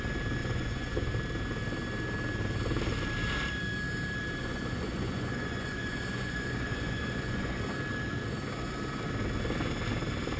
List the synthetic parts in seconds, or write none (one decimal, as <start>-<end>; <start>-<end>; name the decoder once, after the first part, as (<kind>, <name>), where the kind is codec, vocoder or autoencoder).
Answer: 0.4-1.1 (vocoder, Vocos); 4.4-7.6